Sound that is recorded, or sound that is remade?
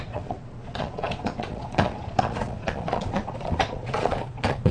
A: remade